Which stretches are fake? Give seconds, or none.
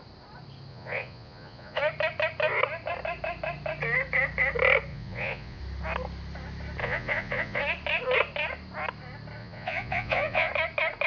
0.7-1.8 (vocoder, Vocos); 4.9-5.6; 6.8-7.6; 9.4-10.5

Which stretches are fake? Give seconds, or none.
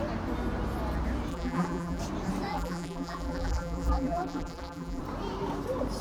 1.3-2.0 (vocoder, BigVGAN v2); 2.5-5.0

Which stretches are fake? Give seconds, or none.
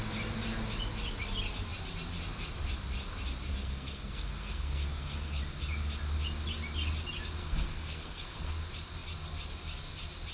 3.5-5.4 (codec, SNAC); 7.4-8.5